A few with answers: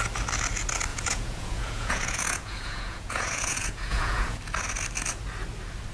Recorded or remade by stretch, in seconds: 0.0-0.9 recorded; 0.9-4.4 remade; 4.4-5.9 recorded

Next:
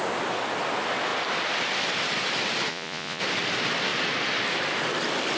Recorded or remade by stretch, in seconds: 0.0-2.7 recorded; 2.7-3.2 remade; 3.2-5.4 recorded